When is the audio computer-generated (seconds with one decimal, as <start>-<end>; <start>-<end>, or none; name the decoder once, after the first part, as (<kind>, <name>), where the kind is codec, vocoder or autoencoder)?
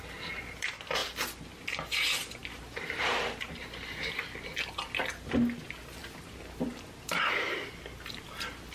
none